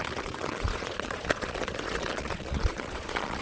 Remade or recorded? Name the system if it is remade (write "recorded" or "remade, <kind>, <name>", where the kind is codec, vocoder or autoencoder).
remade, vocoder, Vocos